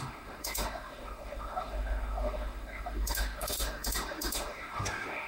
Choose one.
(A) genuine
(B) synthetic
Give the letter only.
B